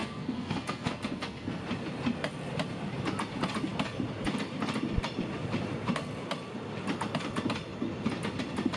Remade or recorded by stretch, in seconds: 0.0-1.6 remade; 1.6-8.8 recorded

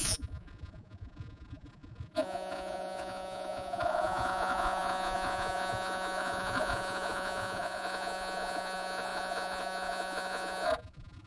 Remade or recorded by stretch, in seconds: 0.0-11.3 remade

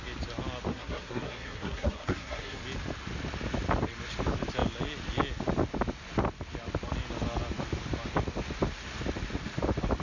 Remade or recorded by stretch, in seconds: 0.0-0.7 recorded; 0.7-2.6 remade; 2.6-10.0 recorded

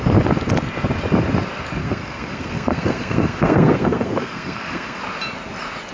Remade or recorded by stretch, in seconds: 0.0-1.8 recorded; 1.8-5.0 remade; 5.0-5.9 recorded

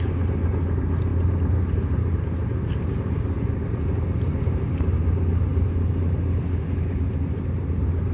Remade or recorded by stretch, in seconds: 0.0-8.1 recorded

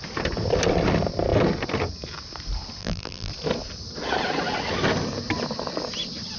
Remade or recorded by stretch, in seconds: 0.0-2.8 recorded; 2.8-3.3 remade; 3.3-6.4 recorded

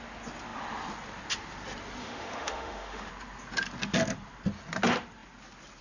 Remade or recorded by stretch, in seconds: 0.0-2.0 recorded; 2.0-3.1 remade; 3.1-5.8 recorded